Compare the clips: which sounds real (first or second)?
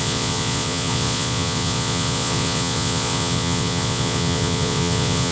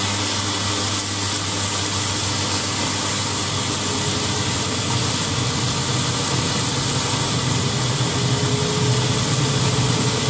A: second